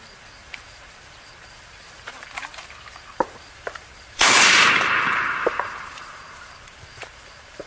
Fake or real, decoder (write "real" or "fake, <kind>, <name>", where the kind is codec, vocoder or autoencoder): fake, vocoder, BigVGAN v2